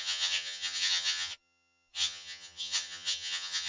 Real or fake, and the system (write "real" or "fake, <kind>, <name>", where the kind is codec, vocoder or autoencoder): fake, vocoder, HiFi-GAN